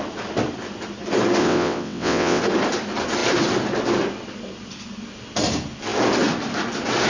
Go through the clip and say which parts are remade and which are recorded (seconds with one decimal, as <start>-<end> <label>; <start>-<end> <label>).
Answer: 0.0-1.4 recorded; 1.4-2.4 remade; 2.4-7.1 recorded